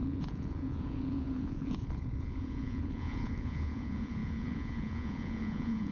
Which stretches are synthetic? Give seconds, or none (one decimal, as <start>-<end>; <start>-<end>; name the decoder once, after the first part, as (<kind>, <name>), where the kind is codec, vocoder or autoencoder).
0.0-5.9 (vocoder, Vocos)